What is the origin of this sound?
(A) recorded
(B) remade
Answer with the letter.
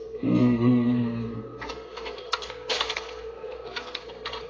B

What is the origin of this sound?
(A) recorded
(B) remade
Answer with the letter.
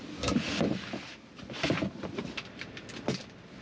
A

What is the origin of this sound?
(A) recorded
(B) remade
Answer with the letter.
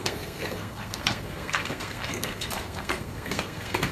B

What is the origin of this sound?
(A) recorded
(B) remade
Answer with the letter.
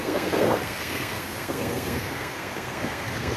B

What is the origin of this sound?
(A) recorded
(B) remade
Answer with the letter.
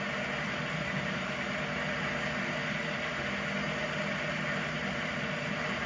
A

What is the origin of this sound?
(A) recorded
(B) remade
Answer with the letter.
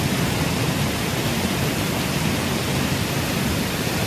A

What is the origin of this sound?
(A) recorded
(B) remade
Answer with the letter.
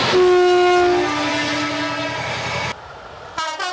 A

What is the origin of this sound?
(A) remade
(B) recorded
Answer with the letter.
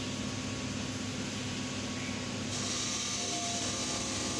B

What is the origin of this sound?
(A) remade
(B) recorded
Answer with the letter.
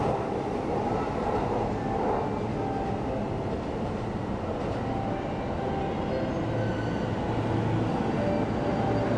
B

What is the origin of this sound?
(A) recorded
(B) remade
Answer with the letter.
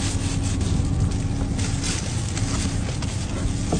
A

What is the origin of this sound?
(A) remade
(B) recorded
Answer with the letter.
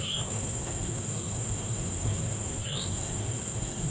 A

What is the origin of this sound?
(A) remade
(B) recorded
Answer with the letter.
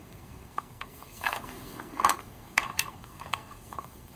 A